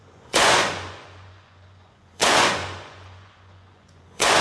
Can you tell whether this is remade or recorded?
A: remade